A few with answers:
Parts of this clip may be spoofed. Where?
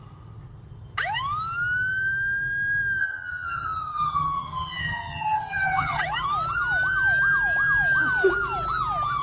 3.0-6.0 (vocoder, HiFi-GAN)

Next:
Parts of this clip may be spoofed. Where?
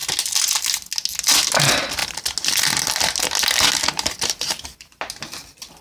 none